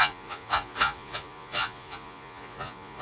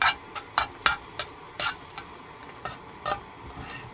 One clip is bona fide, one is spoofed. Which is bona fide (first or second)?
second